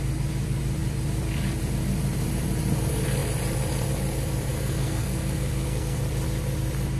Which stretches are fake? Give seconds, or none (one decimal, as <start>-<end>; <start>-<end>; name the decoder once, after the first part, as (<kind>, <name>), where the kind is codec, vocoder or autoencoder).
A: 4.5-6.0 (codec, SNAC)